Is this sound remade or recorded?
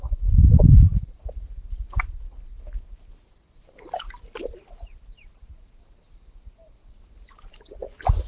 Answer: recorded